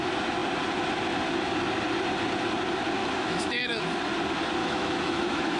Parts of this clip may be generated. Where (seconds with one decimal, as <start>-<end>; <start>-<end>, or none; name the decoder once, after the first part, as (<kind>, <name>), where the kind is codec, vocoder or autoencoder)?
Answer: 3.0-3.8 (autoencoder, DAC-VAE); 4.6-5.6